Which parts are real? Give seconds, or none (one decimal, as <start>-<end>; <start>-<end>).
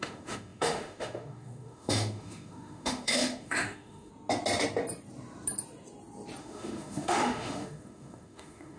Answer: 4.1-6.4